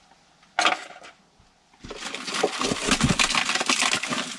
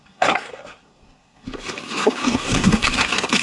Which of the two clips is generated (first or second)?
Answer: second